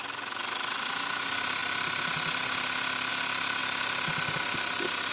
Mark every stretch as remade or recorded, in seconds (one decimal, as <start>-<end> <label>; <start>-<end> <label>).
0.0-5.1 recorded

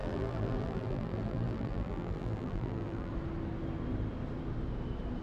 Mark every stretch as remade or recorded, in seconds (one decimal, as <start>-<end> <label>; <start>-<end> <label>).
0.0-3.1 remade; 3.1-5.2 recorded

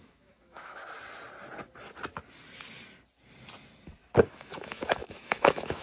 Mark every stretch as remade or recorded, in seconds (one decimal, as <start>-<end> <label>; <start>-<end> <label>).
0.0-0.8 remade; 0.8-4.3 recorded; 4.3-5.8 remade

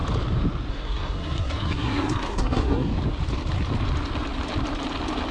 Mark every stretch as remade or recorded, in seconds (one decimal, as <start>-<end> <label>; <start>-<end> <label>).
0.0-0.7 recorded; 0.7-2.9 remade; 2.9-5.3 recorded